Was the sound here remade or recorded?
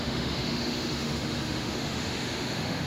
remade